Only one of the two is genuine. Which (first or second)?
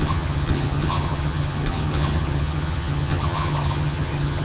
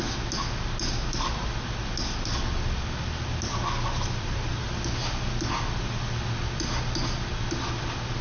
second